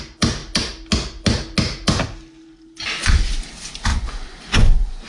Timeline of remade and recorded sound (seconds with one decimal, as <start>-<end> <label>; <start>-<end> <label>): 0.0-3.9 recorded; 3.9-5.1 remade